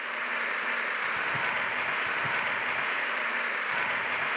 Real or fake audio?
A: fake